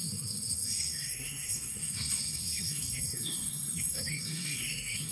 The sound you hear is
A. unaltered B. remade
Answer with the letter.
B